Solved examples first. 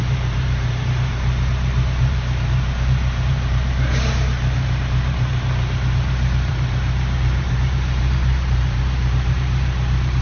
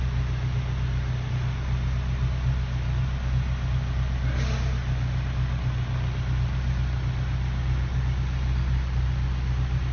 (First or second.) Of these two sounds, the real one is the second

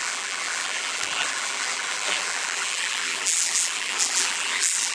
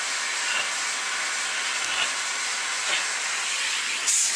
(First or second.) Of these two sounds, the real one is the second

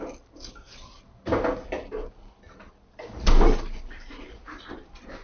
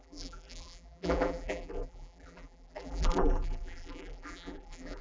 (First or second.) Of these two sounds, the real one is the first